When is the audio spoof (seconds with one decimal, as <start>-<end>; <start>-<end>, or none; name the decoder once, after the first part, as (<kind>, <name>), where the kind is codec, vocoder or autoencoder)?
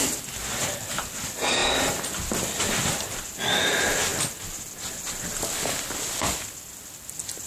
0.4-1.2 (vocoder, BigVGAN v2)